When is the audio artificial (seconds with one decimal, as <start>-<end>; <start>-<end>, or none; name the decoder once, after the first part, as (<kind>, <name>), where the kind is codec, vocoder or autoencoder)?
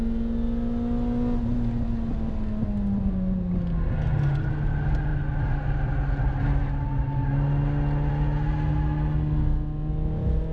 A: none